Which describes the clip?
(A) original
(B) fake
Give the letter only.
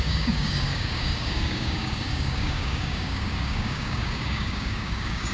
B